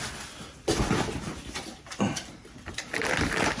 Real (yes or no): yes